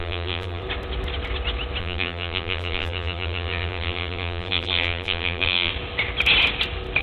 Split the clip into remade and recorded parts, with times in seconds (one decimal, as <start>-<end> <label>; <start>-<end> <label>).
0.0-0.6 remade; 0.6-1.8 recorded; 1.8-5.7 remade; 5.7-7.0 recorded